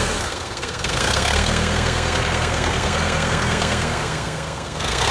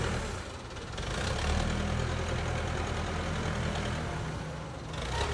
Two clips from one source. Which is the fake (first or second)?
first